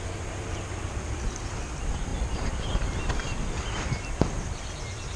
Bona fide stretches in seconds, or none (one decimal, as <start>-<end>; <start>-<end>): 0.0-5.2